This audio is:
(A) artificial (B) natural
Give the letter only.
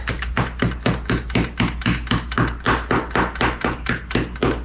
B